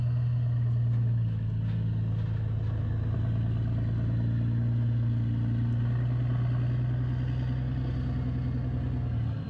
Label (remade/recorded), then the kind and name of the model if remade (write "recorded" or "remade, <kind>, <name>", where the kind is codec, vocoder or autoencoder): recorded